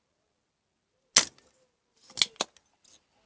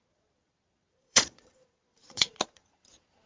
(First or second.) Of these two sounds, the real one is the first